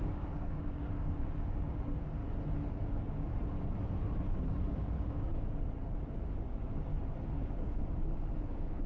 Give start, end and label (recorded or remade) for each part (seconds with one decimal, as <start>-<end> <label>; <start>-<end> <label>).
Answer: 0.0-2.2 remade; 2.2-2.7 recorded; 2.7-3.3 remade; 3.3-4.7 recorded; 4.7-5.3 remade; 5.3-6.1 recorded; 6.1-6.9 remade; 6.9-7.4 recorded; 7.4-8.9 remade